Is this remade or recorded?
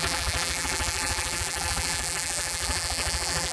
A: remade